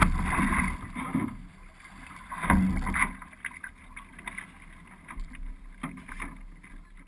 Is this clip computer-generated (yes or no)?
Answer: no